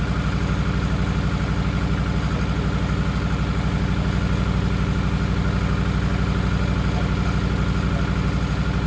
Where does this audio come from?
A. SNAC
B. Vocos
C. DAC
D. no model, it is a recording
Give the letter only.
D